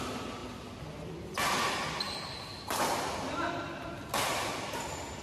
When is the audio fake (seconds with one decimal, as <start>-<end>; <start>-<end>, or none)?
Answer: none